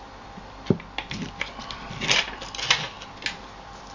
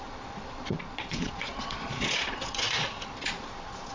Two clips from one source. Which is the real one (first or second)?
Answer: first